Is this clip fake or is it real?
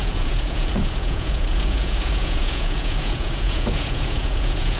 fake